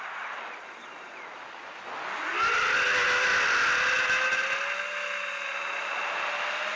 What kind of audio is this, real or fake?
real